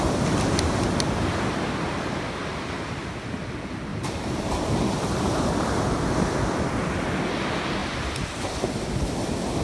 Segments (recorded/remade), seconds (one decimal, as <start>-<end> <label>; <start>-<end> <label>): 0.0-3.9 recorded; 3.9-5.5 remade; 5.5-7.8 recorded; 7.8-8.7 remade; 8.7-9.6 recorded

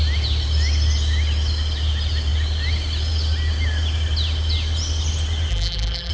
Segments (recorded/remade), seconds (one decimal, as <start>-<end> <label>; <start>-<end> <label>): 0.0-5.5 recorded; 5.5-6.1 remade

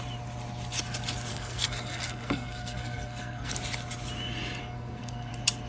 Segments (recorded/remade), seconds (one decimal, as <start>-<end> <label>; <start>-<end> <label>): 0.0-1.3 recorded; 1.3-3.5 remade; 3.5-4.6 recorded; 4.6-5.3 remade; 5.3-5.7 recorded

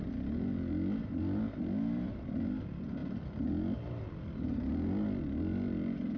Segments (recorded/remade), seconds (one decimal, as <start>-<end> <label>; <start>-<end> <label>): 0.0-6.2 recorded

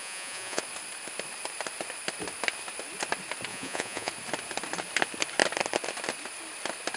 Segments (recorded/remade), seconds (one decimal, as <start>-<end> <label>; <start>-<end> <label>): 0.0-0.6 remade; 0.6-3.5 recorded; 3.5-4.1 remade; 4.1-7.0 recorded

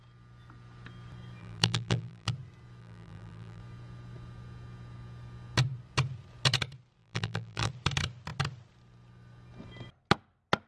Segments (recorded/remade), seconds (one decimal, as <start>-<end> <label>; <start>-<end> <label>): 0.0-1.4 recorded; 1.4-2.3 remade; 2.3-2.8 recorded; 2.8-3.6 remade; 3.6-7.0 recorded; 7.0-7.7 remade; 7.7-10.7 recorded

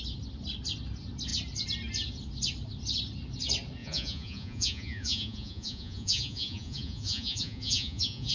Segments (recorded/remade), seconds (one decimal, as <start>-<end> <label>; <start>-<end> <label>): 0.0-3.8 recorded; 3.8-8.3 remade